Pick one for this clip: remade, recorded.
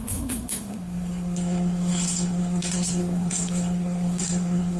remade